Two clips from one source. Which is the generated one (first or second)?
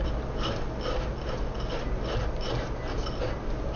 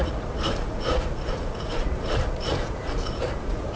second